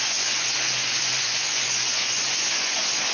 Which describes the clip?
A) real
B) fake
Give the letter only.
B